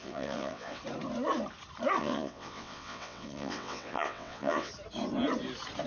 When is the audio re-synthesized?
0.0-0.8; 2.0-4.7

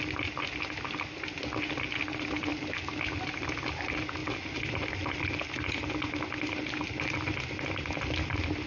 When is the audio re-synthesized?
none

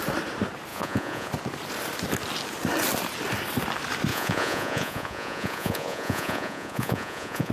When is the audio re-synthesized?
0.7-1.3; 4.1-7.5